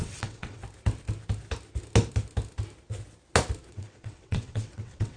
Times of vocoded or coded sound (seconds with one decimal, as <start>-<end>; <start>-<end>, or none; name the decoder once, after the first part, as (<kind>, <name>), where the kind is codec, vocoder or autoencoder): 0.0-0.6 (vocoder, WaveNeXt); 3.7-5.2